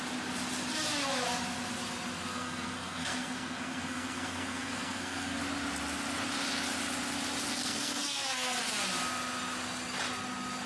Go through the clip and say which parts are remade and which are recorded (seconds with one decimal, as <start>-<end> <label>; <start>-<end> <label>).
0.0-2.3 recorded; 2.3-5.4 remade; 5.4-7.6 recorded; 7.6-8.6 remade; 8.6-10.7 recorded